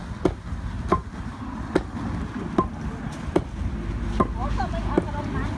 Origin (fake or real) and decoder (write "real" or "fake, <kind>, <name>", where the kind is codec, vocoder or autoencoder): real